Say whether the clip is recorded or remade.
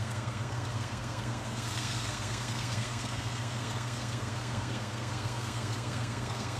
remade